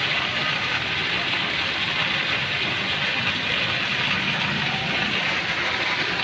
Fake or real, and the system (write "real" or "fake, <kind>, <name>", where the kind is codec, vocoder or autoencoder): real